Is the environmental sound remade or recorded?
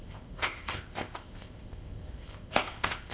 remade